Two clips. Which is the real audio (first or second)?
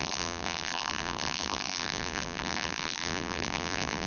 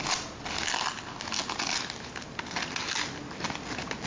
second